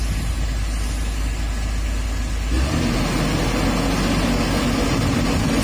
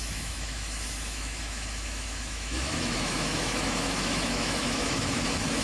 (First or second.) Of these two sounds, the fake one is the second